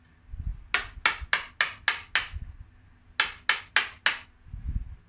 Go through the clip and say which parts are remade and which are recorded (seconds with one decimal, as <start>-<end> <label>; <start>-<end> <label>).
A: 0.0-5.1 recorded